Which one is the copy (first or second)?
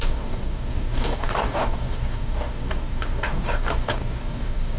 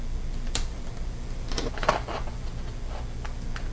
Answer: first